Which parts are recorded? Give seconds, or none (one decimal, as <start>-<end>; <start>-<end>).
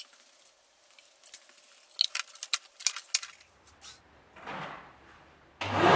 0.0-6.0